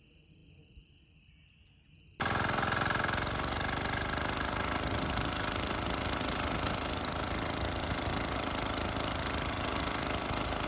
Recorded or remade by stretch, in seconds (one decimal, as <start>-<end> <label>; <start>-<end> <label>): 0.0-10.7 recorded